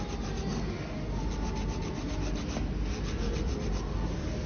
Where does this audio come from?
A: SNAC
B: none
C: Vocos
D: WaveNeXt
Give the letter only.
B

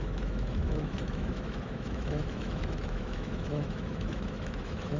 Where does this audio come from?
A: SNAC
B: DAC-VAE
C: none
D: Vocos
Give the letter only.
B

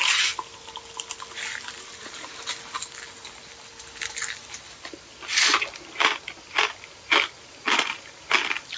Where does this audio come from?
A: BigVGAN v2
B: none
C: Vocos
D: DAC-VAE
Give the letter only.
B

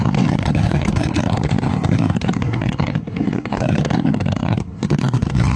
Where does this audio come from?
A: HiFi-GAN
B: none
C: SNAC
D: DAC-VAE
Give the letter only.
C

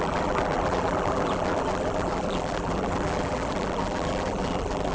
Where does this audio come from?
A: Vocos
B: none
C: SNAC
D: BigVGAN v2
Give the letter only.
D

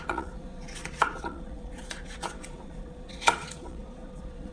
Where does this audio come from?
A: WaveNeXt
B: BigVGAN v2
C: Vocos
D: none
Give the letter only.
C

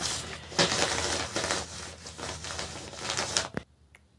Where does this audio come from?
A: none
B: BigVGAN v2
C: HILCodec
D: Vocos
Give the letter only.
A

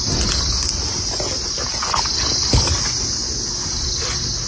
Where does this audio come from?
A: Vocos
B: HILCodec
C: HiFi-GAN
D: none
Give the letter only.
D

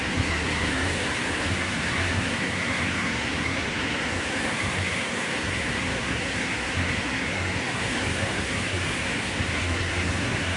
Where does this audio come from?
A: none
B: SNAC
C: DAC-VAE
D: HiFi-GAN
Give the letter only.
B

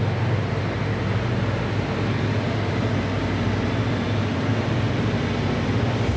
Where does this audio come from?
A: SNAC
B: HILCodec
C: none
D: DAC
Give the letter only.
C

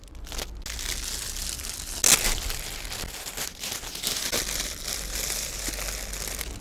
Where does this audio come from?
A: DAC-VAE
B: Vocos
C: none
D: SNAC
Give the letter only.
C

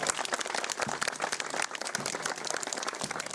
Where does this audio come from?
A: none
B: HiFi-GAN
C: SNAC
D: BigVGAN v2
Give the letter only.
A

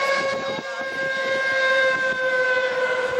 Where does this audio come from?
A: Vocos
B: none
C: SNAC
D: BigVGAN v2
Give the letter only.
B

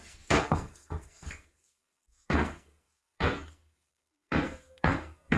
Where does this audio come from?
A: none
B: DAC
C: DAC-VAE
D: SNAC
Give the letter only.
D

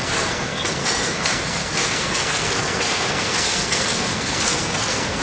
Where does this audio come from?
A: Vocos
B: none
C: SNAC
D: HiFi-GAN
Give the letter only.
C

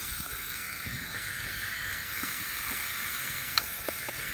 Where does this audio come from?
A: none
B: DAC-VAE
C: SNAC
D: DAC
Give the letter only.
C